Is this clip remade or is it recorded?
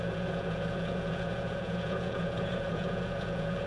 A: remade